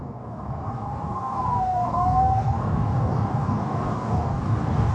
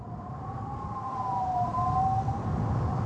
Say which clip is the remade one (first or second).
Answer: first